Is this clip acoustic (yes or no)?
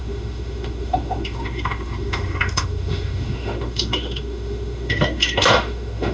no